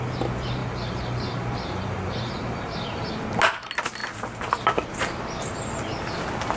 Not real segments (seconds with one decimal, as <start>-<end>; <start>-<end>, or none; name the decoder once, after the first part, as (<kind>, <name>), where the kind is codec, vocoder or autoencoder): 0.6-3.1 (vocoder, BigVGAN v2)